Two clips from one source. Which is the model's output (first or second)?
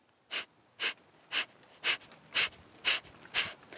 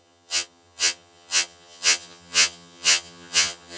second